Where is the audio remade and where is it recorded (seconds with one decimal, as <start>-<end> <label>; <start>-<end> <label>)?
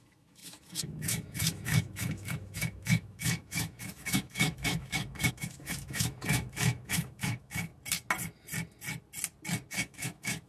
0.0-7.7 remade; 7.7-9.7 recorded; 9.7-10.5 remade